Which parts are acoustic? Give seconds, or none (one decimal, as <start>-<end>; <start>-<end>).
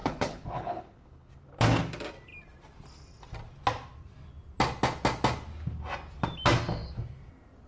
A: 1.3-7.7